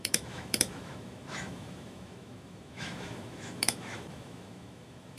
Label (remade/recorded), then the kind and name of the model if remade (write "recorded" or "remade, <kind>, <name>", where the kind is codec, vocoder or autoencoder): remade, autoencoder, DAC-VAE